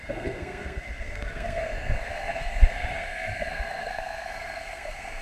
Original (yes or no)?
no